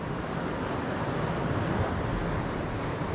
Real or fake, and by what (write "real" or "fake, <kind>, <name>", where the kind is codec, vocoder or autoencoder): real